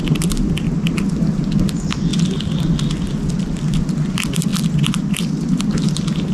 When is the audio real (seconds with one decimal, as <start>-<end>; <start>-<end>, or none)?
0.0-6.3